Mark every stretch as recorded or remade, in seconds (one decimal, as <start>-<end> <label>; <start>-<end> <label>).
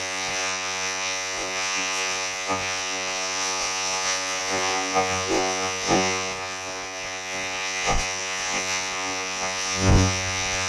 0.0-10.7 remade